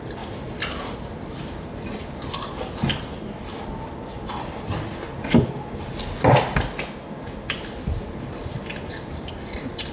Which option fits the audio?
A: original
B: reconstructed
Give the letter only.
A